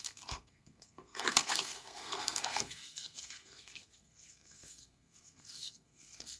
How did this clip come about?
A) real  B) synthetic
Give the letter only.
B